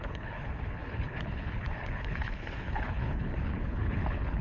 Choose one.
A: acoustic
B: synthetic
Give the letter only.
B